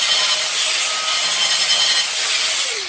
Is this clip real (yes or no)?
yes